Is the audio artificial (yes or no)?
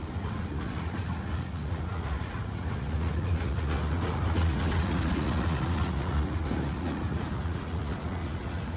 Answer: yes